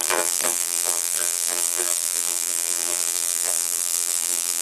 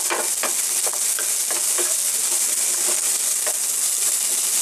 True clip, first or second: second